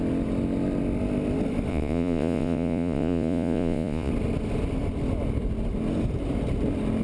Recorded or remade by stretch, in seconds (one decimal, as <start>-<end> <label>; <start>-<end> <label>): 0.0-1.7 recorded; 1.7-4.1 remade; 4.1-7.0 recorded